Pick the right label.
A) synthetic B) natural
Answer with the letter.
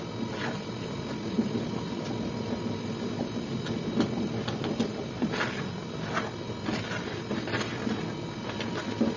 B